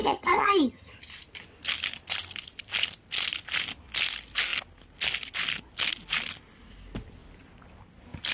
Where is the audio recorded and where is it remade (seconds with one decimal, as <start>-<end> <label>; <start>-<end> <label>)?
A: 0.0-1.0 remade; 1.0-8.3 recorded